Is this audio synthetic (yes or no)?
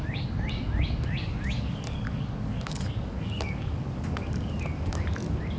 yes